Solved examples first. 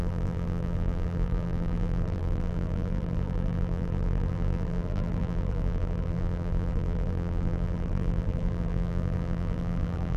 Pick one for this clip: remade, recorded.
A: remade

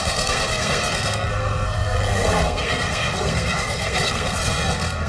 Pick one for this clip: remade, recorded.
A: remade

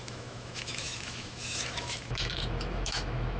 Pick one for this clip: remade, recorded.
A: remade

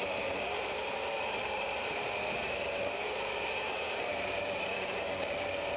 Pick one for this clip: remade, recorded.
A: remade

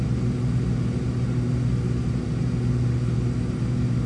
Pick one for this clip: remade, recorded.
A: recorded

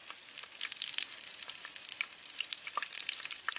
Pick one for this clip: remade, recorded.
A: remade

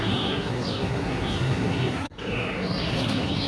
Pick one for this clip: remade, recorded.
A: remade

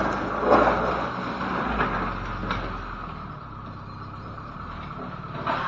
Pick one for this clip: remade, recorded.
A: recorded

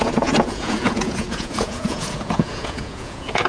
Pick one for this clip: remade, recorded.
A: remade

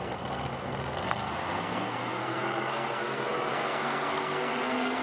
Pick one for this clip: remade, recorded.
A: remade